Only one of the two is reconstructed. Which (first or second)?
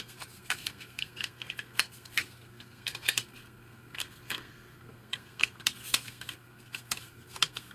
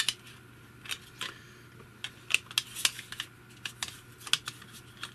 first